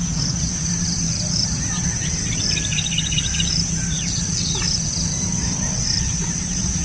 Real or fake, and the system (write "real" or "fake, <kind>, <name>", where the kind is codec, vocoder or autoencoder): fake, vocoder, BigVGAN v2